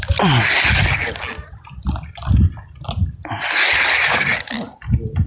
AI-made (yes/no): no